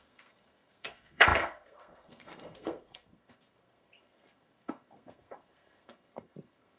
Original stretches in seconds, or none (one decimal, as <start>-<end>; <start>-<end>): none